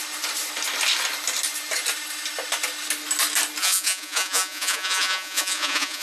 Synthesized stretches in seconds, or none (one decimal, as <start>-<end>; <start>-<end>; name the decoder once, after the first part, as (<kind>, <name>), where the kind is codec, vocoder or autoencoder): 3.6-6.0 (vocoder, Vocos)